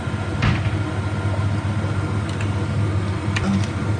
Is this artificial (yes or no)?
no